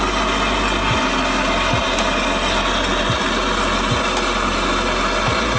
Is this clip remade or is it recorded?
recorded